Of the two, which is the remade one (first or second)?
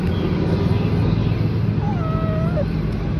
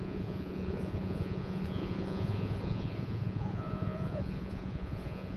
second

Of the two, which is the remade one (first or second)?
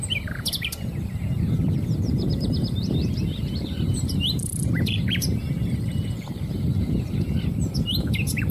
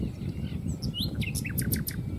first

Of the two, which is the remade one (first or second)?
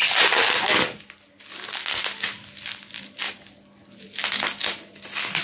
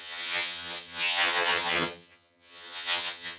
second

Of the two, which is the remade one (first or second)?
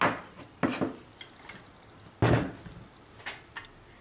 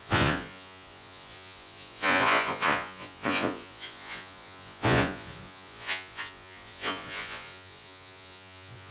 second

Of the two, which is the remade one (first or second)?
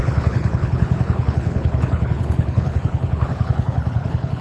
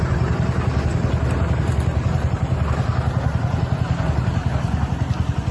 first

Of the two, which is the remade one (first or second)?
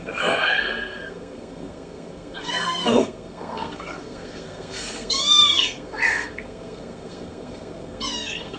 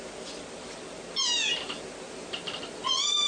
first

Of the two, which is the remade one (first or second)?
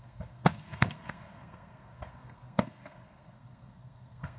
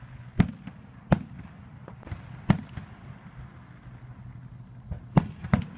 first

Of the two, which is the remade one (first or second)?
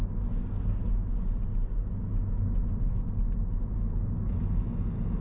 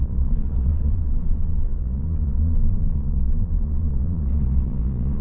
second